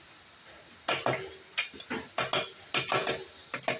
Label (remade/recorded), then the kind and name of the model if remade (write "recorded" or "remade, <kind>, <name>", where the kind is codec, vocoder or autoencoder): recorded